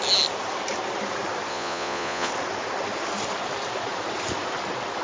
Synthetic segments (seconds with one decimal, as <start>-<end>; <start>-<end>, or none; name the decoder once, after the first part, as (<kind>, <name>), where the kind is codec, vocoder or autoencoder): 1.5-2.3 (vocoder, Vocos)